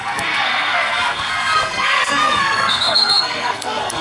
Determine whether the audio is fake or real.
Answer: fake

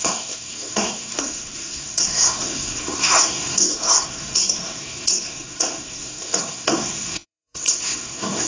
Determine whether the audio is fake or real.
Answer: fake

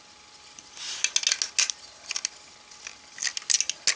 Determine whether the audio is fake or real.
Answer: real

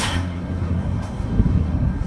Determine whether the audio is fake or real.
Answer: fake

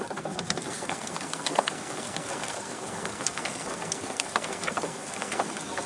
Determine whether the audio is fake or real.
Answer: fake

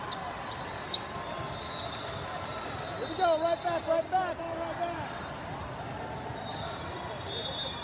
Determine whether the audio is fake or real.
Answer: real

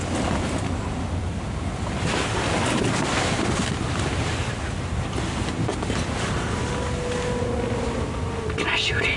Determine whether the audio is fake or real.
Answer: real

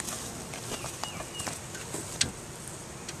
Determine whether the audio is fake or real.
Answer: real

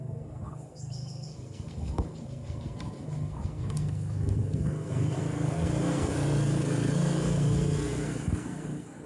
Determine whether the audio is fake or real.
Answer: fake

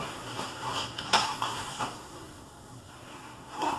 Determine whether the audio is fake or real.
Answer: fake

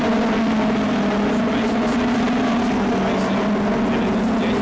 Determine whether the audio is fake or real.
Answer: real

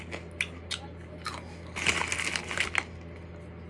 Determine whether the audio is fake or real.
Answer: real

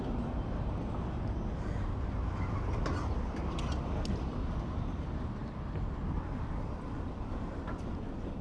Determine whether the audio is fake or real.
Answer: real